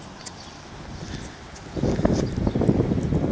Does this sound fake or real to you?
real